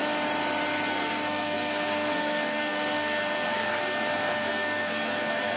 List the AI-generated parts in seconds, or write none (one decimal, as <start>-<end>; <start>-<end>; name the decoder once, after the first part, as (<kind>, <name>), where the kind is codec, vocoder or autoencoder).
0.9-5.6 (codec, SNAC)